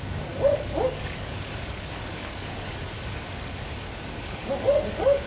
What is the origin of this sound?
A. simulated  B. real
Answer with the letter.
A